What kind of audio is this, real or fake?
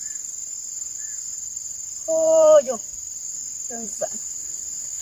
fake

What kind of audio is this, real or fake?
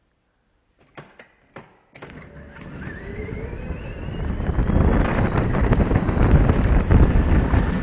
real